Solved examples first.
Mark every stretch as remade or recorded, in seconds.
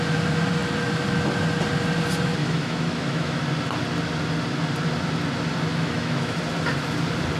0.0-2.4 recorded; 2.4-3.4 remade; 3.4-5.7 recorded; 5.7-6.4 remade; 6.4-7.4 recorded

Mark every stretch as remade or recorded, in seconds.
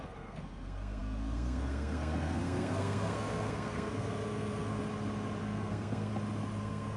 0.0-4.8 remade; 4.8-5.4 recorded; 5.4-6.1 remade; 6.1-6.6 recorded; 6.6-7.0 remade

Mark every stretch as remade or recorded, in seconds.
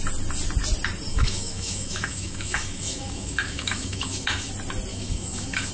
0.0-1.1 recorded; 1.1-4.5 remade; 4.5-4.9 recorded; 4.9-5.7 remade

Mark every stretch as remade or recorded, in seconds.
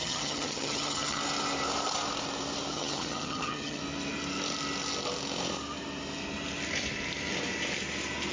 0.0-1.2 remade; 1.2-2.7 recorded; 2.7-3.8 remade; 3.8-8.3 recorded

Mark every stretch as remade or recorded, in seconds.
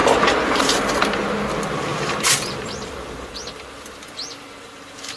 0.0-5.2 recorded